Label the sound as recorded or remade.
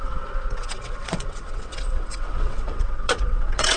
remade